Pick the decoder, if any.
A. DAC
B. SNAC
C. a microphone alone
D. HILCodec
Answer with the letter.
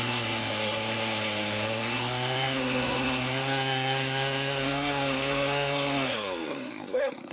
B